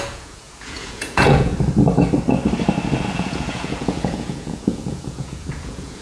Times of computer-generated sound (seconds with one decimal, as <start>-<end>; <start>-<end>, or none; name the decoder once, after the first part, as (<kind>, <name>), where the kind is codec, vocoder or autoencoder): 0.0-1.5 (vocoder, Vocos); 3.1-6.0